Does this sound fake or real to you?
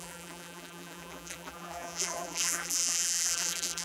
fake